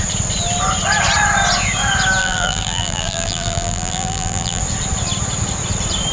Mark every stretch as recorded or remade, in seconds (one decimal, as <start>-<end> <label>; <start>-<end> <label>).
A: 0.0-2.2 recorded; 2.2-4.6 remade; 4.6-6.1 recorded